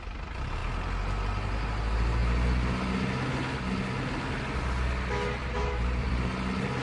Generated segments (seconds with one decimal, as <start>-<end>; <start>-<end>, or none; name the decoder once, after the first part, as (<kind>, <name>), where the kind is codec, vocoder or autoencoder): 5.4-6.1 (vocoder, BigVGAN v2)